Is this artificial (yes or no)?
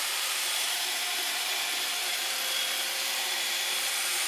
yes